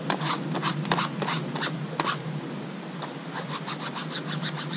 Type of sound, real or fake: real